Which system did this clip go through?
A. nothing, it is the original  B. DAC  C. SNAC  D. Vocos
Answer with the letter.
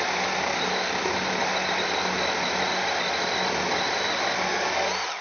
A